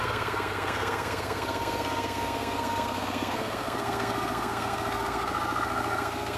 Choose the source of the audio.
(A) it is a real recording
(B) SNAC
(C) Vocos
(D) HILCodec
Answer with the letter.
B